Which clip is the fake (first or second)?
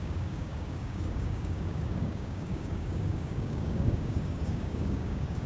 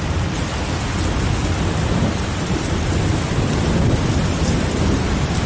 first